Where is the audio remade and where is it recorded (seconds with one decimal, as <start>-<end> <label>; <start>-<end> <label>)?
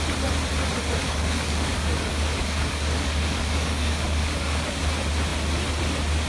0.0-1.0 recorded; 1.0-4.8 remade; 4.8-6.3 recorded